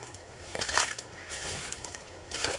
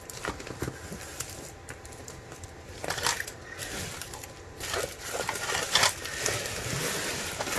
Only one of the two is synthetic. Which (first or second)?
first